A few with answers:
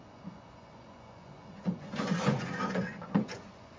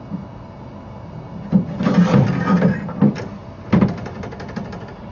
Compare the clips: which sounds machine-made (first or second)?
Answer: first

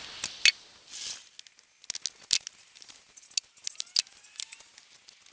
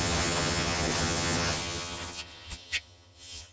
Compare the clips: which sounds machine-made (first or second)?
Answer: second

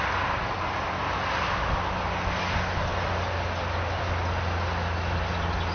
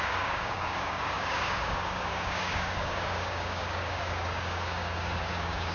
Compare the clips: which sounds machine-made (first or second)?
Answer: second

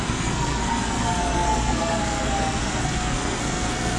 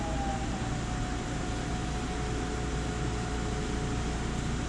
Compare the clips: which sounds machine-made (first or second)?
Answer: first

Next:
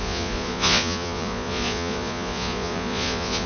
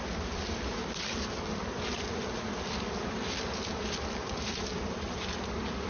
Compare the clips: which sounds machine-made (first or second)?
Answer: first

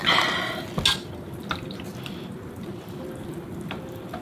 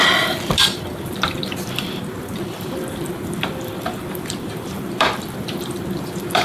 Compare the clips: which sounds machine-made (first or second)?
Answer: second